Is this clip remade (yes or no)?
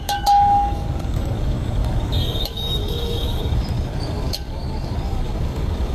yes